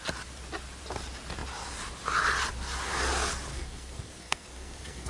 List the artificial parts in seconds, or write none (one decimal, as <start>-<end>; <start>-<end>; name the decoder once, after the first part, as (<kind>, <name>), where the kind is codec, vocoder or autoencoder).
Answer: 3.5-5.1 (codec, SNAC)

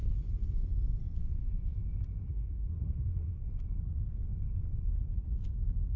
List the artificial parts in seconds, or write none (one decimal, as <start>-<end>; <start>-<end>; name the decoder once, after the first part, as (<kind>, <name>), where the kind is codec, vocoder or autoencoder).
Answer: 2.3-3.5 (codec, SNAC)

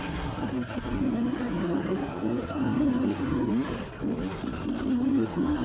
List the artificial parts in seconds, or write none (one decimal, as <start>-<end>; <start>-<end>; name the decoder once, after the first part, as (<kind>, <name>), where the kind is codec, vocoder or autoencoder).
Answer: 0.0-3.5 (codec, SNAC); 4.9-5.6

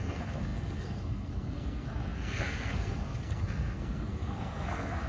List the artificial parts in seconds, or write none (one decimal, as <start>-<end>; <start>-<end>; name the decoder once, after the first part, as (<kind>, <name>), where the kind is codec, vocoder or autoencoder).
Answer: 0.0-5.1 (codec, SNAC)

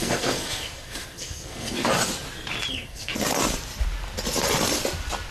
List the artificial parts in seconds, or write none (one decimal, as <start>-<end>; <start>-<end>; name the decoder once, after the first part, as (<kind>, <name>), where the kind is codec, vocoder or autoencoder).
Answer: 0.0-1.8 (codec, SNAC); 2.7-3.1

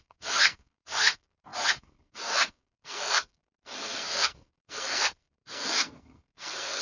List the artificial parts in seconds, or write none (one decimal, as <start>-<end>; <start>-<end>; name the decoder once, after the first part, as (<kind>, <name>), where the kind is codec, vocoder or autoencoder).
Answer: 0.0-6.8 (codec, SNAC)

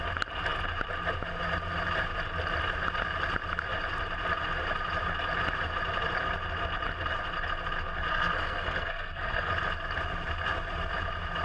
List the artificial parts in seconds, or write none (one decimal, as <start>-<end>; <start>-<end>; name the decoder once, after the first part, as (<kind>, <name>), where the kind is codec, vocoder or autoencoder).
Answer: 8.1-9.5 (codec, SNAC)